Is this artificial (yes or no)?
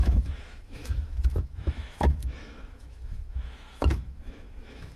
yes